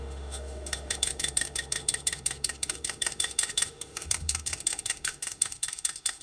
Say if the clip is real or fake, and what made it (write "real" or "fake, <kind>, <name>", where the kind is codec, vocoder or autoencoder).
fake, autoencoder, DAC-VAE